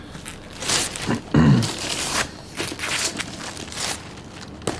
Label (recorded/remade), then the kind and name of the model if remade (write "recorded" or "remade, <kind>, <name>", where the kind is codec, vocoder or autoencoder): recorded